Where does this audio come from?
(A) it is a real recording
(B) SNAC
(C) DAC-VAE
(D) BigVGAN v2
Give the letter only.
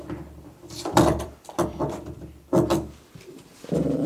D